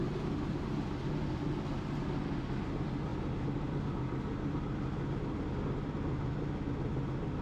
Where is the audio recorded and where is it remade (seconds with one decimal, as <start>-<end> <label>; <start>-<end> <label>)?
0.0-3.1 recorded; 3.1-3.9 remade; 3.9-7.4 recorded